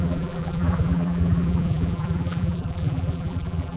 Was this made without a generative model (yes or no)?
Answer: no